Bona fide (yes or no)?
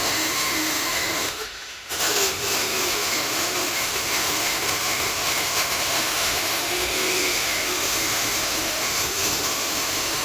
no